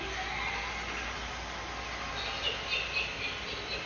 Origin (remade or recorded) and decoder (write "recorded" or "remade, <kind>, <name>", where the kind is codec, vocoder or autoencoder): recorded